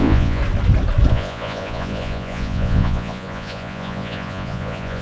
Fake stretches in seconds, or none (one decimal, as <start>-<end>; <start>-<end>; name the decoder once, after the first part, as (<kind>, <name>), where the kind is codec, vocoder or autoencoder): 0.0-0.4 (vocoder, Vocos); 1.1-5.0